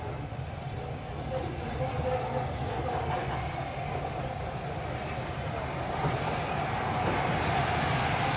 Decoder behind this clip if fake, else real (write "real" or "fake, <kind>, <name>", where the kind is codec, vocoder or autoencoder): real